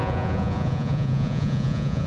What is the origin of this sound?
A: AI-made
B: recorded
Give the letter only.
A